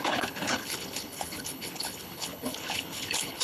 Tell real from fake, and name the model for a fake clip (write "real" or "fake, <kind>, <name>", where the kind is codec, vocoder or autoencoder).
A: fake, codec, HILCodec